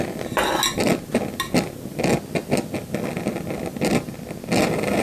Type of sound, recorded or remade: recorded